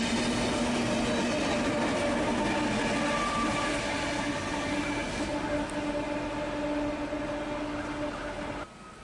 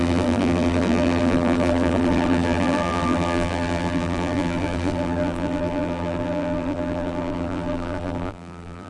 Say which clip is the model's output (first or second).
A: second